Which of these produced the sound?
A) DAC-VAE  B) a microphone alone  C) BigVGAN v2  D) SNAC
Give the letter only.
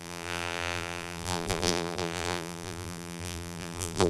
C